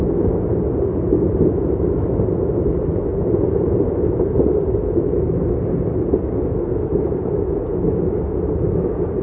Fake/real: real